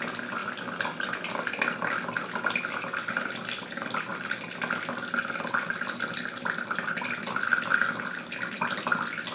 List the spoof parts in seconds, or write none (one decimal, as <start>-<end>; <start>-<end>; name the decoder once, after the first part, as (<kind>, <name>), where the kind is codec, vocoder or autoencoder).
none